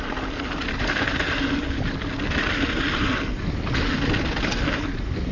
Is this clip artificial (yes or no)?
no